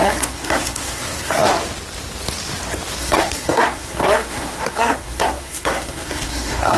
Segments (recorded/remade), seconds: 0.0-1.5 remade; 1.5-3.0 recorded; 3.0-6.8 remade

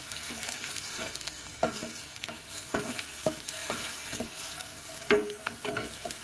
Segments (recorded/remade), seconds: 0.0-6.2 remade

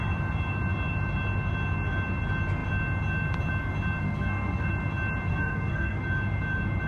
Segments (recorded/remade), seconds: 0.0-4.0 recorded; 4.0-4.7 remade; 4.7-5.3 recorded; 5.3-6.0 remade; 6.0-6.9 recorded

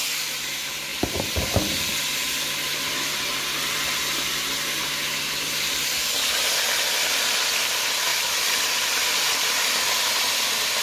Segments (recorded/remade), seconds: 0.0-0.9 recorded; 0.9-1.9 remade; 1.9-10.8 recorded

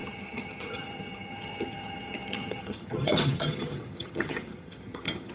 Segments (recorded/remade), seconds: 0.0-5.3 remade

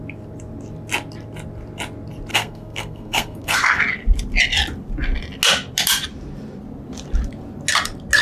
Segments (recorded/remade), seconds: 0.0-2.3 recorded; 2.3-3.8 remade; 3.8-8.2 recorded